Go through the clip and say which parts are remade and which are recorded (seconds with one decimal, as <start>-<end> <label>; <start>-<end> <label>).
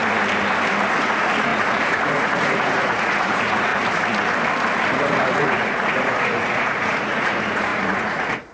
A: 0.0-1.0 recorded; 1.0-3.7 remade; 3.7-4.9 recorded; 4.9-8.5 remade